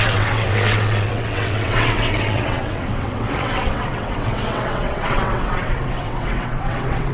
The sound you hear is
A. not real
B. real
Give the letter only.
A